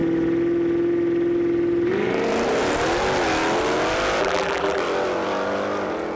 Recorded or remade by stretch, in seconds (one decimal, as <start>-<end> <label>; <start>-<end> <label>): 0.0-4.2 recorded; 4.2-4.8 remade; 4.8-6.2 recorded